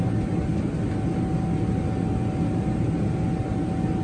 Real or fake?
real